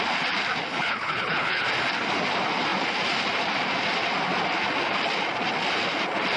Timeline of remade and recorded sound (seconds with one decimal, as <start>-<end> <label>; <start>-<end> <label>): 0.0-0.7 recorded; 0.7-1.6 remade; 1.6-6.4 recorded